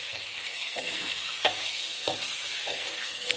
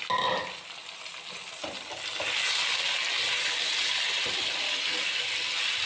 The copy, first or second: first